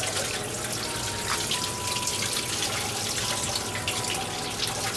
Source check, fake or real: real